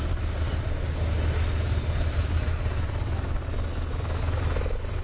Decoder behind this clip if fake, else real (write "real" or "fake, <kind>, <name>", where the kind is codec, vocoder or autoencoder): real